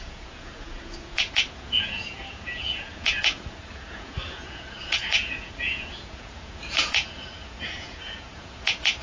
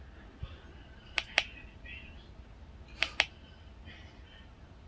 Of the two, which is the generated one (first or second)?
first